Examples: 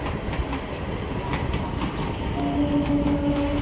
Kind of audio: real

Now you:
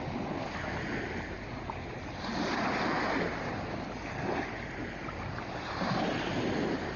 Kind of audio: real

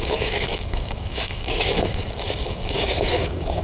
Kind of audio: fake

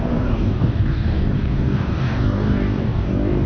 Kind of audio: fake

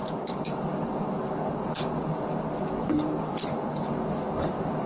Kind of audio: fake